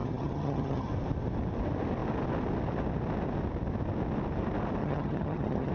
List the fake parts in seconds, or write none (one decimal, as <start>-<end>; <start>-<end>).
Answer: 0.0-0.9; 4.8-5.7